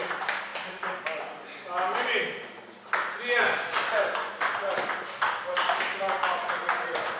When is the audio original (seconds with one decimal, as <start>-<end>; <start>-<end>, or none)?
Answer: 0.0-3.4; 4.5-5.9; 6.6-7.2